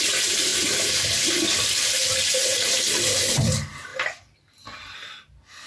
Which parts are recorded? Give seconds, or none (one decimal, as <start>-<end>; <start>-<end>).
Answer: 0.0-5.7